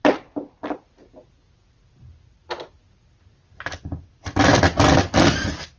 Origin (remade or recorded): recorded